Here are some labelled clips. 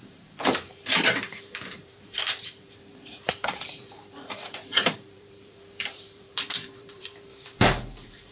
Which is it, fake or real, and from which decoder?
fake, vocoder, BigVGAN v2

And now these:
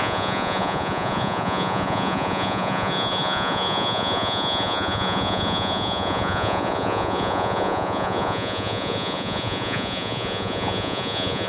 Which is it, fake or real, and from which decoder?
fake, vocoder, Vocos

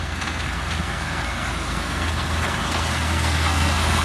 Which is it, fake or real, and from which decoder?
fake, codec, SNAC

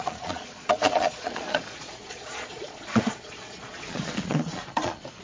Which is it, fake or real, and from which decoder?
fake, vocoder, Vocos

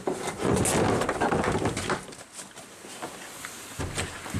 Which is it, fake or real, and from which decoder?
real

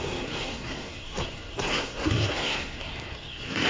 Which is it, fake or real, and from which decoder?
fake, codec, SNAC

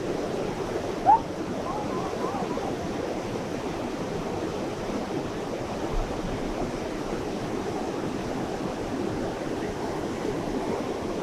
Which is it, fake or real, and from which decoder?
real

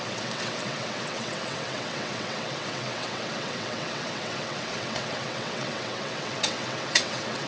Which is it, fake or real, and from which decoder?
fake, vocoder, WaveNeXt